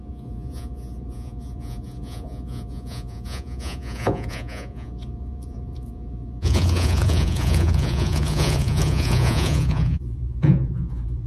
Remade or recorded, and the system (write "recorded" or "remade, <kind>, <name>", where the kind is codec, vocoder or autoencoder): remade, vocoder, Vocos